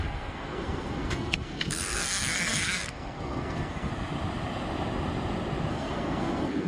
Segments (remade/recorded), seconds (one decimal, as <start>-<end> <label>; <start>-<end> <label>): 0.0-3.9 remade; 3.9-5.7 recorded; 5.7-6.7 remade